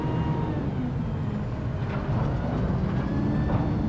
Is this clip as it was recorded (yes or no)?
yes